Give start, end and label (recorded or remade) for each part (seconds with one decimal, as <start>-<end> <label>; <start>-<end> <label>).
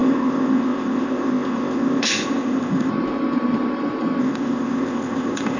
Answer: 0.0-2.9 remade; 2.9-4.2 recorded; 4.2-5.6 remade